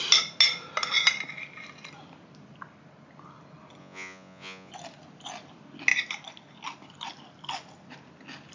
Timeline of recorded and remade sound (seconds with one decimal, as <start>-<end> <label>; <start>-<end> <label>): 0.0-3.8 recorded; 3.8-4.7 remade; 4.7-8.5 recorded